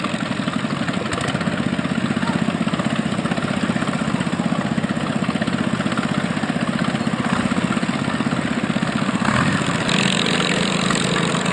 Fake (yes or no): no